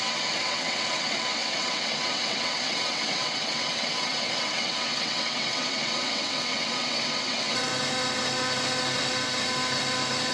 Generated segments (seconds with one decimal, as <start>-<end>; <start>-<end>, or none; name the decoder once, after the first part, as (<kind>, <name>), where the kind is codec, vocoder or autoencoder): 0.0-7.7 (vocoder, WaveNeXt)